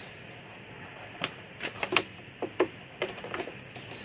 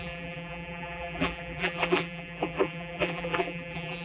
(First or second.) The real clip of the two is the first